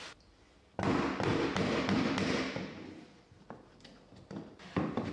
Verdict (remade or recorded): remade